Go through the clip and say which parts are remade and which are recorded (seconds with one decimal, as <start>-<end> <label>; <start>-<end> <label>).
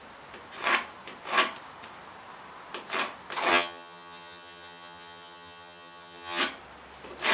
0.0-3.5 recorded; 3.5-6.4 remade; 6.4-7.3 recorded